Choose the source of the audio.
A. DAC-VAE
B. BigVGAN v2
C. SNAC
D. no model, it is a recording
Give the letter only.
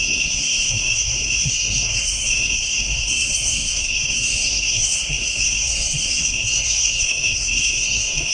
C